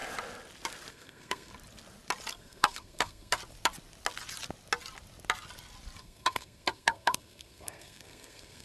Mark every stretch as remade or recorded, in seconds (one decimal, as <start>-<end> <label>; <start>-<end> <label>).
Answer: 0.0-0.9 recorded; 0.9-1.5 remade; 1.5-2.3 recorded; 2.3-3.4 remade; 3.4-6.0 recorded; 6.0-8.6 remade